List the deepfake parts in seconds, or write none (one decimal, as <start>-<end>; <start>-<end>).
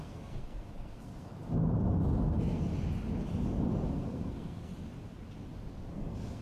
0.0-1.4; 2.2-2.7; 3.9-4.7; 5.9-6.4